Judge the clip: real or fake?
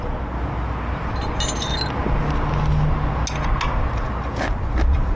real